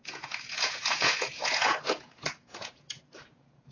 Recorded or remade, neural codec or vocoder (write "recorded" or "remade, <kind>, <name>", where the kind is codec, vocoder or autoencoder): remade, vocoder, Vocos